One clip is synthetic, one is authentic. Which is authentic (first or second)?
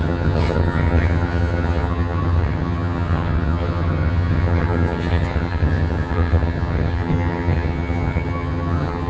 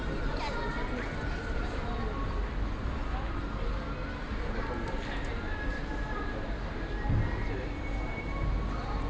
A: second